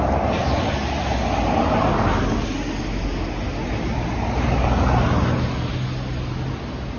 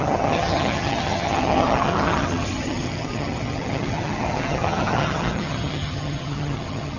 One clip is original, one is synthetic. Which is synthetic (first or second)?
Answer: second